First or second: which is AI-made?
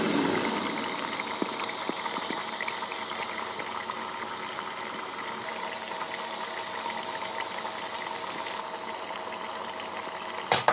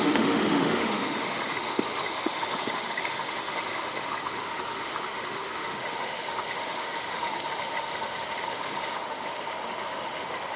second